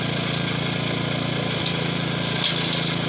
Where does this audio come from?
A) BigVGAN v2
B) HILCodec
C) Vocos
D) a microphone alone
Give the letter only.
D